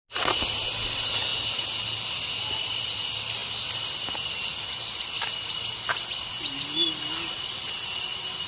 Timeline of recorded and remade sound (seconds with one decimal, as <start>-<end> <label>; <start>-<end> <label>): 0.0-8.5 recorded